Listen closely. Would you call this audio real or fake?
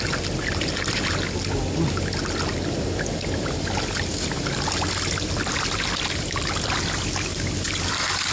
real